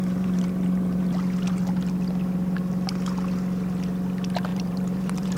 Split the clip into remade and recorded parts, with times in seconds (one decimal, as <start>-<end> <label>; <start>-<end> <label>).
0.0-1.0 remade; 1.0-4.5 recorded; 4.5-5.4 remade